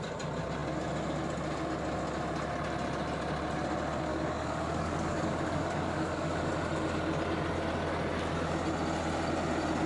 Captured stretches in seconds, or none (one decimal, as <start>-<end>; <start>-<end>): 0.0-4.1; 6.5-9.9